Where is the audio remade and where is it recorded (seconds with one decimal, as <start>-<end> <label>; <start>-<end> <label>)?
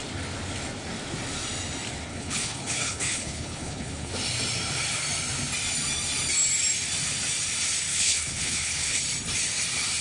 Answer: 0.0-2.1 recorded; 2.1-4.1 remade; 4.1-7.9 recorded; 7.9-9.0 remade; 9.0-10.0 recorded